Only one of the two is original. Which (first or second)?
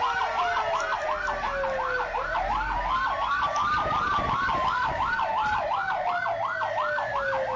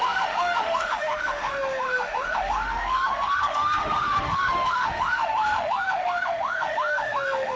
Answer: first